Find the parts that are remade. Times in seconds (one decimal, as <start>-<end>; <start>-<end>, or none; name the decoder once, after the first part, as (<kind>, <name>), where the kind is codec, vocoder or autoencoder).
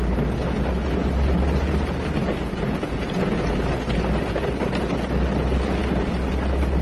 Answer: 2.2-3.7 (vocoder, Vocos)